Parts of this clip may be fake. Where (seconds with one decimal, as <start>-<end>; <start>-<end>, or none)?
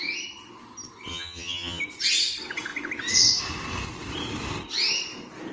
1.1-1.8